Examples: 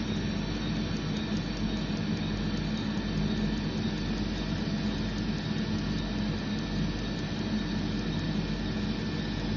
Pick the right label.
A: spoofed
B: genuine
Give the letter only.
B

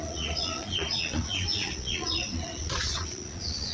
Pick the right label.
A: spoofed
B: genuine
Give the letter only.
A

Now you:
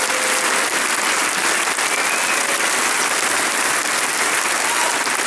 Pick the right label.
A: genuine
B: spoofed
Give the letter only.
A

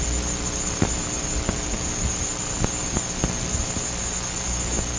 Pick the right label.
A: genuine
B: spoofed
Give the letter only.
A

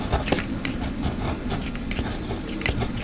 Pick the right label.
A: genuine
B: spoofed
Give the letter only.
A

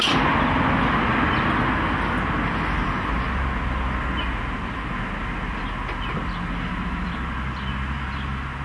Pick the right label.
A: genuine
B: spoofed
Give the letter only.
A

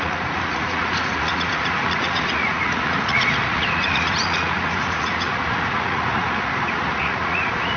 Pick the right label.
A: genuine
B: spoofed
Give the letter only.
B